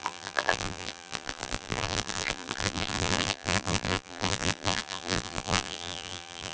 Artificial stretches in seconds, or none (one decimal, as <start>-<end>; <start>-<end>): 0.0-6.5